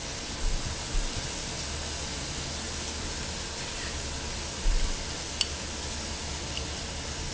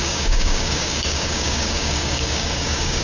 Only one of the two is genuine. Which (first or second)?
first